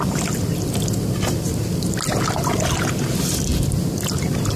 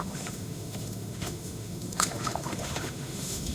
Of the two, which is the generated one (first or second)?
second